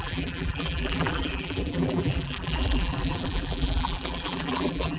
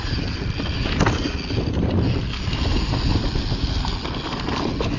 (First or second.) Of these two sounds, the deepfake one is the first